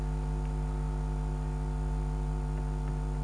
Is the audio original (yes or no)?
yes